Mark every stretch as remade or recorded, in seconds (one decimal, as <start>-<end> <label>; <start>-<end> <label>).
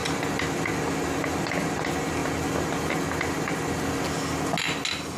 0.0-5.2 recorded